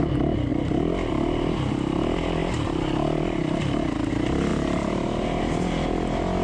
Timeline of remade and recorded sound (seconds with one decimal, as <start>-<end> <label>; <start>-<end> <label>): 0.0-4.5 recorded; 4.5-5.4 remade; 5.4-6.4 recorded